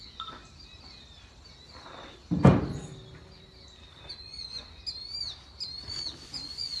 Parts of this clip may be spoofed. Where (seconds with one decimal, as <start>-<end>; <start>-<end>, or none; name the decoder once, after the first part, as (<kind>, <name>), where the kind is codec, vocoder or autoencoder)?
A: 0.0-0.4 (vocoder, Vocos); 4.2-4.8; 5.9-6.8